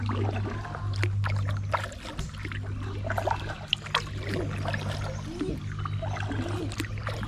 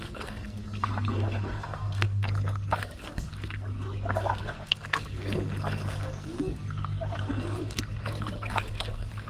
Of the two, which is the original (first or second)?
first